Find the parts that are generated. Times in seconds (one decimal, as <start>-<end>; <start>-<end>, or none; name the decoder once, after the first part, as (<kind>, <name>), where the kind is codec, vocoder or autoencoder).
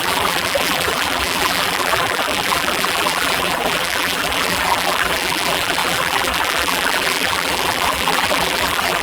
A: 0.0-9.0 (vocoder, BigVGAN v2)